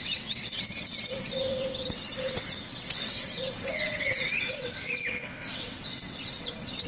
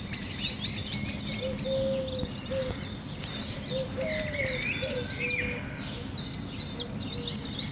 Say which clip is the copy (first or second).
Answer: first